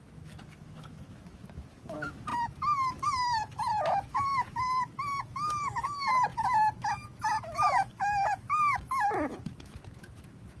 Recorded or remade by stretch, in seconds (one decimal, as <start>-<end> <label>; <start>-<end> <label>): 0.0-10.6 remade